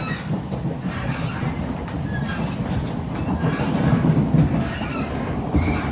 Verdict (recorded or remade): recorded